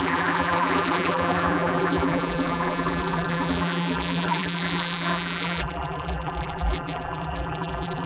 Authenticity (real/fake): fake